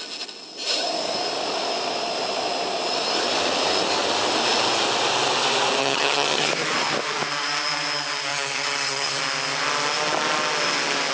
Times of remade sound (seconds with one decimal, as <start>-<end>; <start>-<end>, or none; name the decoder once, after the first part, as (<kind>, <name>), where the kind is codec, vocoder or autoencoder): 5.8-6.5 (vocoder, HiFi-GAN); 8.3-9.2